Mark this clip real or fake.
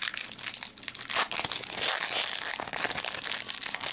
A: real